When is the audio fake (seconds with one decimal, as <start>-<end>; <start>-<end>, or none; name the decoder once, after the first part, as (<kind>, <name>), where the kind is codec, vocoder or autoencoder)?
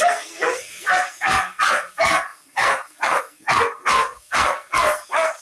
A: 0.0-5.4 (codec, SNAC)